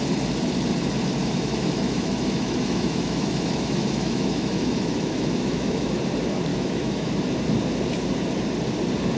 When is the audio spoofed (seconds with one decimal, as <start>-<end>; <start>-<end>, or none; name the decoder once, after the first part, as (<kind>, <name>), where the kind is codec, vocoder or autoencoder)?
1.2-6.0 (autoencoder, DAC-VAE); 6.5-7.1